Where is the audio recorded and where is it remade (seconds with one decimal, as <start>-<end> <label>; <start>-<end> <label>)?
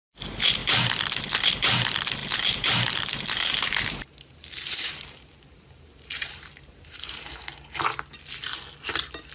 0.0-2.2 recorded; 2.2-7.3 remade; 7.3-9.3 recorded